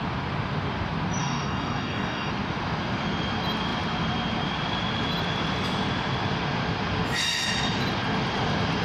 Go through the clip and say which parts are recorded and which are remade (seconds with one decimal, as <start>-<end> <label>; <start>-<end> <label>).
0.0-1.2 recorded; 1.2-2.3 remade; 2.3-8.8 recorded